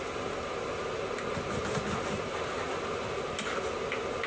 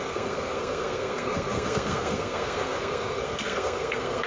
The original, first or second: first